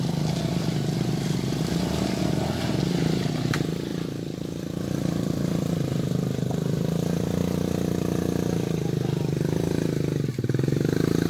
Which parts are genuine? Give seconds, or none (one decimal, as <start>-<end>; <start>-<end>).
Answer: 0.0-11.3